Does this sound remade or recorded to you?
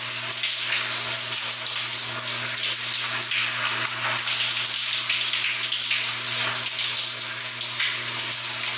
recorded